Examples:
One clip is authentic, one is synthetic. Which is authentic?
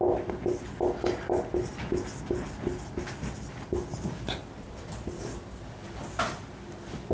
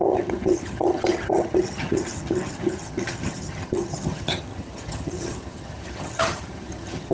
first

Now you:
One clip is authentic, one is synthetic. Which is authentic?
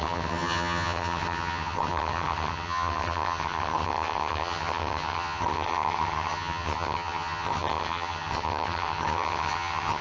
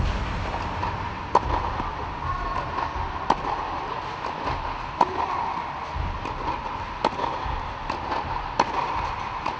second